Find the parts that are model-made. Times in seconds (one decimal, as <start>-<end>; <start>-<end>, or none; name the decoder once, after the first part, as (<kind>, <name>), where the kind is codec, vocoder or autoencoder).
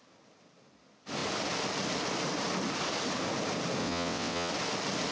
3.8-4.5 (vocoder, WaveNeXt)